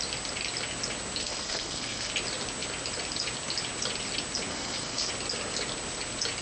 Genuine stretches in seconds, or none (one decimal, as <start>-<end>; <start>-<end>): 0.0-1.2; 2.1-4.5; 5.1-6.4

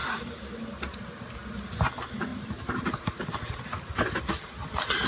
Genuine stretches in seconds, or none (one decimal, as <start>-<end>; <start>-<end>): 1.0-2.3; 4.3-5.1

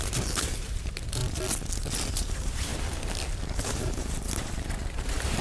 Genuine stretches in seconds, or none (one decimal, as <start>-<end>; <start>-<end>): 1.2-2.1; 2.7-3.8

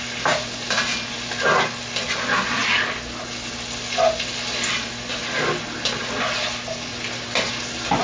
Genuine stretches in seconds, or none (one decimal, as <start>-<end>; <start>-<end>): 0.0-8.0

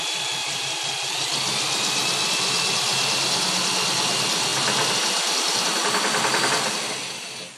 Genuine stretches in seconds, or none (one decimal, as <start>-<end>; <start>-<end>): 0.0-0.4; 1.3-4.5; 6.5-7.6